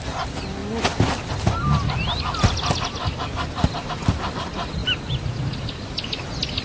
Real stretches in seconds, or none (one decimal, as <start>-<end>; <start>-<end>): 0.0-6.6